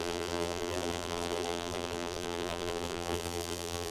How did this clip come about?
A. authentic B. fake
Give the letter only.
B